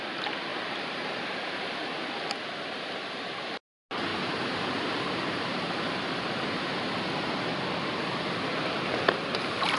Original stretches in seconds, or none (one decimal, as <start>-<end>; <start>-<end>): 0.0-0.5; 1.6-4.1; 5.8-9.8